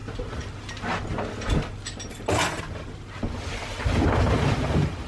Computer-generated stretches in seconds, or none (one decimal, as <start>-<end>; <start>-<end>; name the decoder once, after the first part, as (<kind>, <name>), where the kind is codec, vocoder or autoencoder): 2.6-5.1 (vocoder, BigVGAN v2)